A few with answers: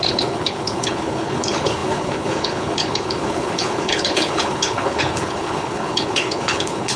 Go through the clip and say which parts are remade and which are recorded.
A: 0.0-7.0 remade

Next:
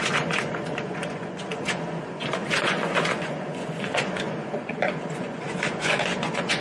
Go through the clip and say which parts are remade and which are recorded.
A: 0.0-6.6 remade

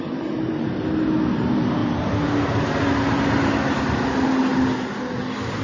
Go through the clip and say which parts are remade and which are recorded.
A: 0.0-5.6 recorded

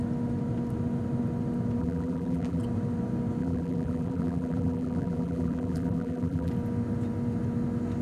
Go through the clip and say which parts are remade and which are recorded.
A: 0.0-1.8 recorded; 1.8-2.6 remade; 2.6-3.4 recorded; 3.4-6.5 remade; 6.5-8.0 recorded

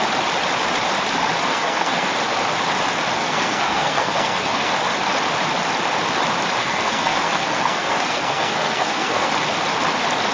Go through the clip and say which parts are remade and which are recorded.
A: 0.0-1.5 recorded; 1.5-2.1 remade; 2.1-3.2 recorded; 3.2-4.7 remade; 4.7-6.6 recorded; 6.6-9.3 remade; 9.3-10.3 recorded

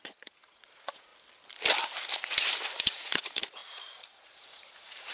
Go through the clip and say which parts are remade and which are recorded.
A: 0.0-1.1 remade; 1.1-2.8 recorded; 2.8-5.1 remade

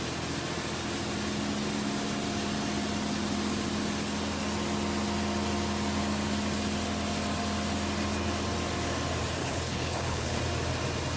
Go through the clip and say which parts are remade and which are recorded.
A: 0.0-9.4 recorded; 9.4-10.4 remade; 10.4-11.2 recorded